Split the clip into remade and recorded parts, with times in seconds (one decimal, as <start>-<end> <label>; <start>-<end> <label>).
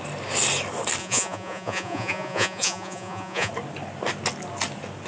0.0-1.0 recorded; 1.0-3.5 remade; 3.5-5.1 recorded